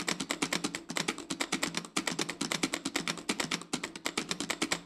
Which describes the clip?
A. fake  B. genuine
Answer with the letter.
A